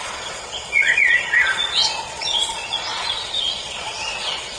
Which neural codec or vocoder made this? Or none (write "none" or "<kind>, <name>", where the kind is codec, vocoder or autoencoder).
vocoder, Vocos